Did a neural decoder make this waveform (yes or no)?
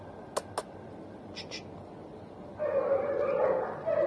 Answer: no